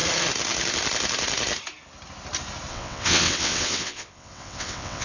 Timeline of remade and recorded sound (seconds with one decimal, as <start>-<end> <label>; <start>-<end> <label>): 0.0-2.7 recorded; 2.7-5.0 remade